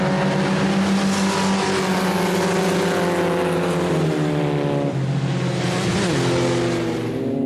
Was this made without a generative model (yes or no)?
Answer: yes